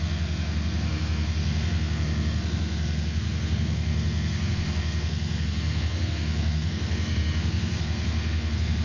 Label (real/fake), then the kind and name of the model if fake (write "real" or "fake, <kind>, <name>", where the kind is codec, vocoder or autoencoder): fake, codec, SNAC